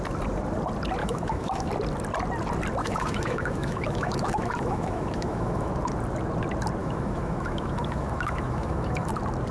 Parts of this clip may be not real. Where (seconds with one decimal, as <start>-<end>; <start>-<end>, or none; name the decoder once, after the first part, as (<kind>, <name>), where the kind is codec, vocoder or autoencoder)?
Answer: 1.0-1.7 (autoencoder, DAC-VAE); 2.8-5.7; 6.8-9.1